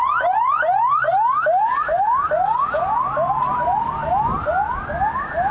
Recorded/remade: recorded